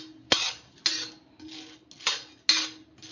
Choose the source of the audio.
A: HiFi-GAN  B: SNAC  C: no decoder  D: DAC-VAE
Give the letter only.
C